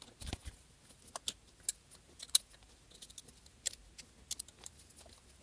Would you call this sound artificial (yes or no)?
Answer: no